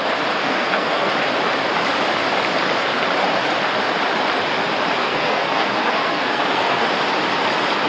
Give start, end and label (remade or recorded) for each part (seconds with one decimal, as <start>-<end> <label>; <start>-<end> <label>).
0.0-0.4 recorded; 0.4-1.1 remade; 1.1-5.0 recorded; 5.0-6.9 remade; 6.9-7.9 recorded